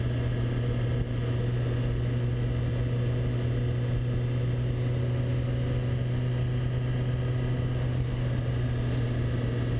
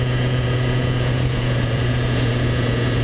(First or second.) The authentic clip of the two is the first